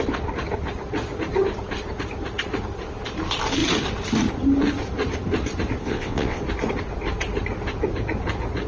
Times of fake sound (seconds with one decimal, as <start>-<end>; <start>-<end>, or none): 5.8-6.4